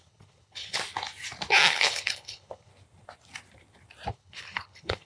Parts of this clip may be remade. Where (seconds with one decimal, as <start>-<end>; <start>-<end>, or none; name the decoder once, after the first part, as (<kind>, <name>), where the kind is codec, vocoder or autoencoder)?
0.0-0.8 (codec, HILCodec); 1.7-2.7; 4.1-5.0